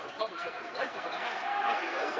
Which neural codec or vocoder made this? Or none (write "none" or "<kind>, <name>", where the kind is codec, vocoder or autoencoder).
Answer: codec, SNAC